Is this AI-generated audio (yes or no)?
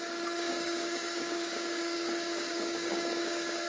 yes